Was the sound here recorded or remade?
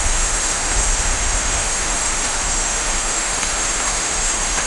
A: remade